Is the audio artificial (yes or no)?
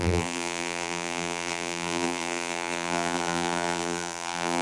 yes